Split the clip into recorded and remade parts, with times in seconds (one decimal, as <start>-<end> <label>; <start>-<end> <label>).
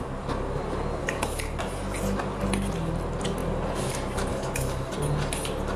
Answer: 0.0-1.0 recorded; 1.0-1.6 remade; 1.6-4.3 recorded; 4.3-4.9 remade; 4.9-5.8 recorded